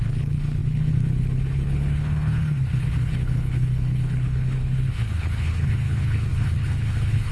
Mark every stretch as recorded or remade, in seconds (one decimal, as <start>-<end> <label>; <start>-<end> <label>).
0.0-7.3 remade